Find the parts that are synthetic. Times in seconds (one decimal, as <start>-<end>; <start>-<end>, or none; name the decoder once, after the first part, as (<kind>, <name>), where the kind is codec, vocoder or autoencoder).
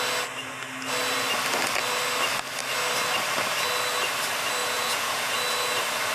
4.6-5.3 (vocoder, Vocos)